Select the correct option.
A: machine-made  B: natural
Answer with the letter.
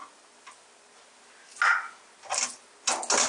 B